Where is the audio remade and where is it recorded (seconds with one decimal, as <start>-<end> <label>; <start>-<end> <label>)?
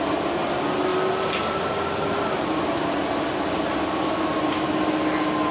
0.0-5.5 recorded